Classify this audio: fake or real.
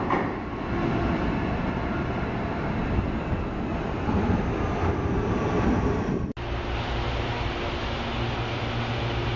real